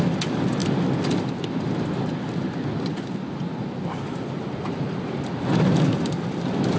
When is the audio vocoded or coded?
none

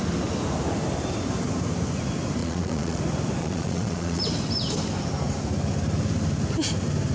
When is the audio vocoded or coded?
2.4-3.0 (vocoder, Vocos); 3.4-4.2

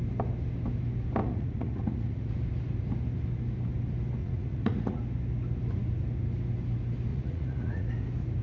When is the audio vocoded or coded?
1.2-2.3 (vocoder, Vocos); 4.2-5.0; 7.1-7.9

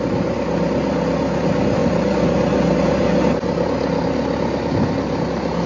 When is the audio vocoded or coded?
none

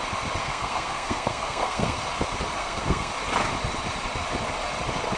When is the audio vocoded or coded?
0.4-2.0 (codec, SNAC); 2.6-3.1

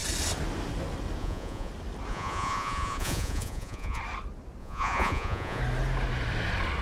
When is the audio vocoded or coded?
1.2-1.7 (vocoder, Vocos); 2.1-4.0; 4.6-5.6

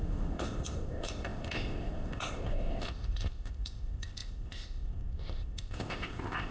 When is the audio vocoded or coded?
0.0-6.5 (codec, ZipCodec)